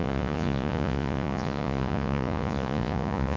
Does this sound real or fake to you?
fake